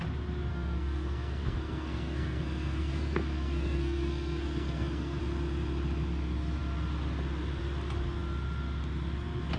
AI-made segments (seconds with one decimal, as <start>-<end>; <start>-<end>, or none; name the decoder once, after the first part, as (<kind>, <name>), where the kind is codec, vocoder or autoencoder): 0.5-5.2 (codec, SNAC)